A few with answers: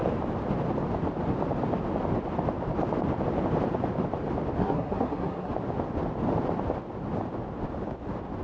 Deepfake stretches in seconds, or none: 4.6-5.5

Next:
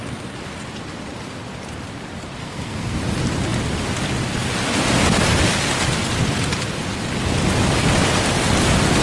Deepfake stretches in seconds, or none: 2.4-3.0

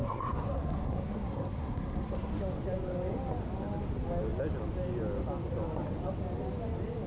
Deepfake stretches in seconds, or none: 0.0-2.3

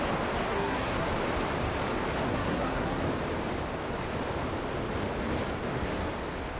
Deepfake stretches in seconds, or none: 0.5-1.1; 2.3-3.0

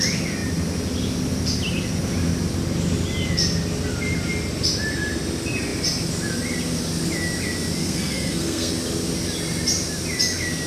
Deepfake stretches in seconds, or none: 7.8-8.7

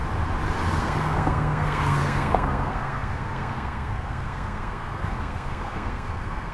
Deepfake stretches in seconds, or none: 0.8-6.5

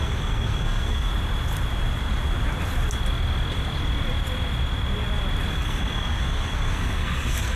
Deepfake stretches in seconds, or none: 0.0-1.1; 5.5-7.6